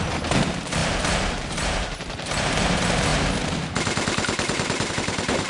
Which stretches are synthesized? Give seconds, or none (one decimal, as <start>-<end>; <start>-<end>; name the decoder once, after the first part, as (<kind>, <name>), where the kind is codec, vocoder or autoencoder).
0.0-3.1 (vocoder, BigVGAN v2); 4.9-5.5